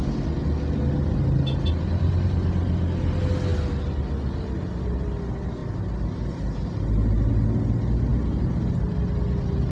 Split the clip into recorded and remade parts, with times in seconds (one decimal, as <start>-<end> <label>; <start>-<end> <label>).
0.0-9.7 recorded